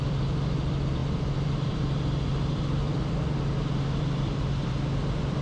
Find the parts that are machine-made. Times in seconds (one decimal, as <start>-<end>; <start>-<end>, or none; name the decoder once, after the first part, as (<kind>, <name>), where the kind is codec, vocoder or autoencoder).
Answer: 0.0-5.4 (vocoder, BigVGAN v2)